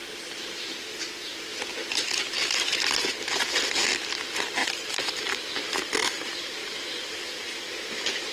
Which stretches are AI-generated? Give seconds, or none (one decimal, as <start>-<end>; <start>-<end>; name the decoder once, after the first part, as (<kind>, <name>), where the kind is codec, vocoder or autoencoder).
0.0-1.9 (vocoder, BigVGAN v2); 4.6-7.5